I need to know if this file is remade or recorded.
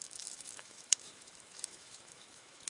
remade